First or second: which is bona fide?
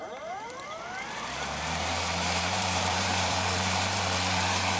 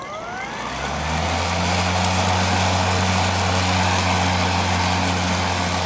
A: second